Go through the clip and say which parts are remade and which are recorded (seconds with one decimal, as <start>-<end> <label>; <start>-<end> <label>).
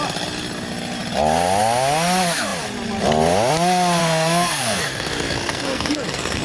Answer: 0.0-4.0 recorded; 4.0-6.4 remade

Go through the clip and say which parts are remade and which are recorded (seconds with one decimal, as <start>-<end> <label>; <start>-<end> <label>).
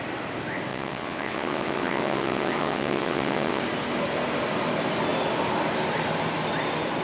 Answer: 0.0-0.7 recorded; 0.7-3.6 remade; 3.6-7.0 recorded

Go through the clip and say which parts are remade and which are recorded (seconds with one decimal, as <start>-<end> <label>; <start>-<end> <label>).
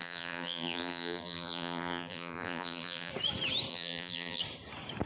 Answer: 0.0-3.1 remade; 3.1-3.7 recorded; 3.7-4.4 remade; 4.4-5.1 recorded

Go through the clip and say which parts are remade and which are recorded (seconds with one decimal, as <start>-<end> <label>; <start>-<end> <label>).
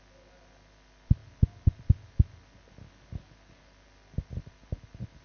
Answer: 0.0-5.2 recorded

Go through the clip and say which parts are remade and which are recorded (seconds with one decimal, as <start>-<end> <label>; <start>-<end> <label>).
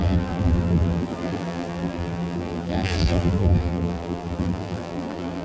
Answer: 0.0-5.4 remade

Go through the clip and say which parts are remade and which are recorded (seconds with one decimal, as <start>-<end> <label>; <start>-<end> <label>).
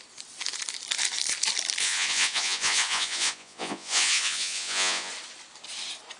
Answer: 0.0-1.8 recorded; 1.8-5.1 remade; 5.1-6.2 recorded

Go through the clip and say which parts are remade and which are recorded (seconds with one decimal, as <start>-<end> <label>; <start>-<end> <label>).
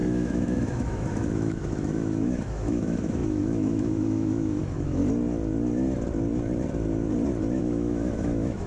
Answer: 0.0-5.0 remade; 5.0-7.6 recorded; 7.6-8.7 remade